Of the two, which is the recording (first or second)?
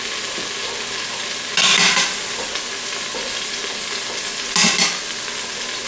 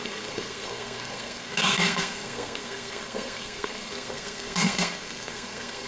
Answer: first